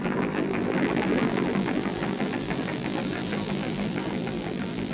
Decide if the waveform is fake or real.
fake